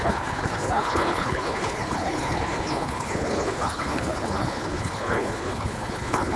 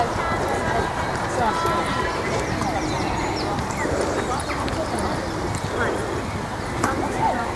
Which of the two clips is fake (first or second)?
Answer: first